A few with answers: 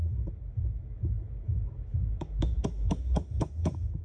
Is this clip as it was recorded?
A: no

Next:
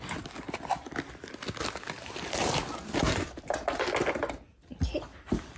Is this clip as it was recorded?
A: yes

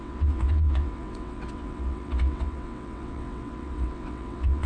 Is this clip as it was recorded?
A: no